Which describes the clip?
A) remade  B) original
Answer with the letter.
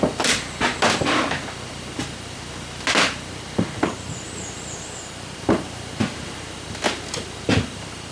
B